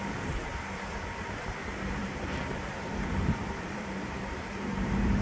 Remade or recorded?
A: remade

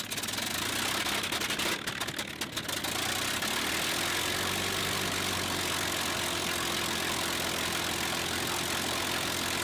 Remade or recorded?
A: recorded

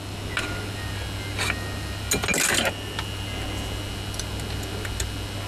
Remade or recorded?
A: recorded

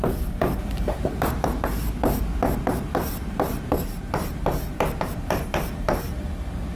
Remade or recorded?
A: remade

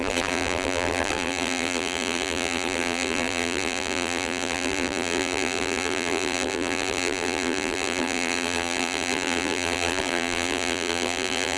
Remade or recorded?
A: remade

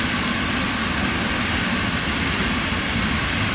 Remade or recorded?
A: remade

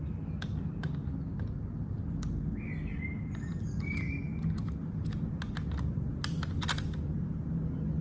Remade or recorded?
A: recorded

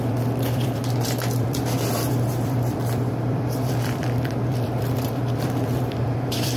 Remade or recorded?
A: remade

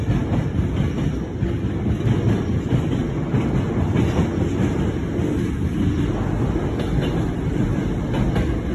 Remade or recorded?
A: recorded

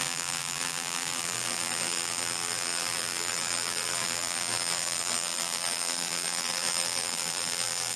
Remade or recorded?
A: remade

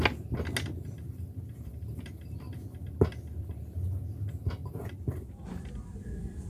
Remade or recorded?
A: recorded